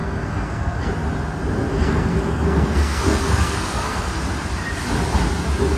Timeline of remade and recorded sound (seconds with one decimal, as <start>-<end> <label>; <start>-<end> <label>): 0.0-0.9 remade; 0.9-1.7 recorded; 1.7-4.2 remade; 4.2-5.8 recorded